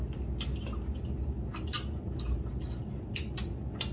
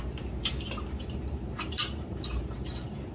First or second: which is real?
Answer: first